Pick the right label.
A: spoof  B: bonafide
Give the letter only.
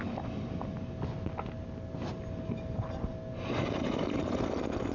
B